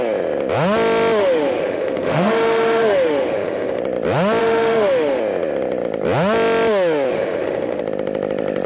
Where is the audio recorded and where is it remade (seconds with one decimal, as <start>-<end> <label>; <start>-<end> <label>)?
0.0-1.2 recorded; 1.2-3.8 remade; 3.8-4.4 recorded; 4.4-5.2 remade; 5.2-7.1 recorded; 7.1-7.8 remade; 7.8-8.7 recorded